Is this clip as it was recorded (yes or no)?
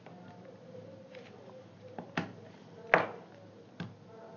yes